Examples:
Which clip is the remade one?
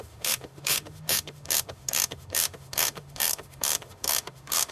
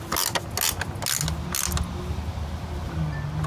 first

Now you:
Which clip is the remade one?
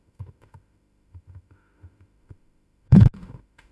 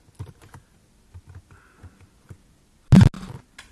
first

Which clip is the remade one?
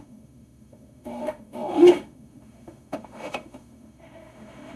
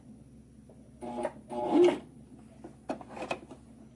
first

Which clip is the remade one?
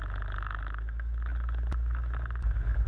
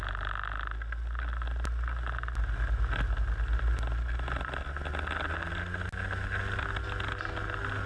first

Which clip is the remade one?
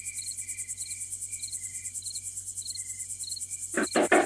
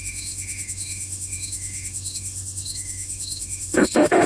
second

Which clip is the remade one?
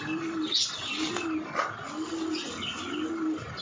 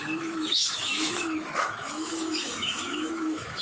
second